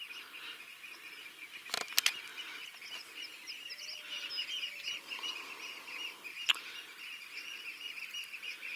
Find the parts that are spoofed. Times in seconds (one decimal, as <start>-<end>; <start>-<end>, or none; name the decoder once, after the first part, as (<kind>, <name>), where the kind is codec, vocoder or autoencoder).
none